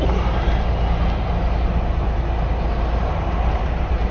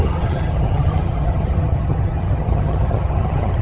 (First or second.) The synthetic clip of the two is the second